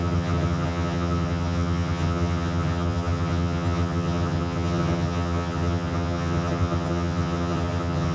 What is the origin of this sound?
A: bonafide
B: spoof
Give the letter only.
B